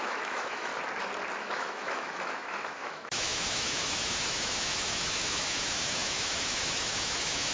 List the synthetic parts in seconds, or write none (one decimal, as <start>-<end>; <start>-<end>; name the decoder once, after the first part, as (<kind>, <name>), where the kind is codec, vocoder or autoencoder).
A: 0.0-0.7 (autoencoder, DAC-VAE); 1.4-7.5